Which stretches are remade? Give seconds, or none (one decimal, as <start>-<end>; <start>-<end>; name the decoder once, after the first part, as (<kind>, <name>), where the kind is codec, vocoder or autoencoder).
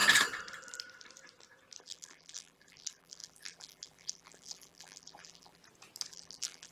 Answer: 1.8-5.6 (vocoder, BigVGAN v2); 6.1-6.7